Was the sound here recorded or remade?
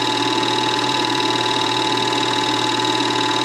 remade